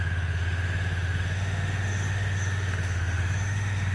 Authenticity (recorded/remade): remade